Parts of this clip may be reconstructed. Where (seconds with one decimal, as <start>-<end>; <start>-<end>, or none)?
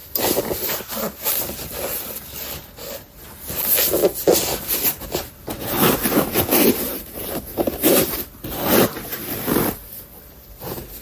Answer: none